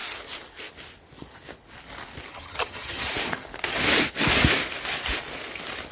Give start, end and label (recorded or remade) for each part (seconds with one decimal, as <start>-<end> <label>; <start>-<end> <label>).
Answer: 0.0-2.3 recorded; 2.3-3.1 remade; 3.1-5.9 recorded